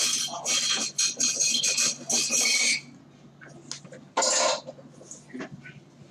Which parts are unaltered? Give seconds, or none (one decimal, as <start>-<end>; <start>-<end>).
0.0-6.1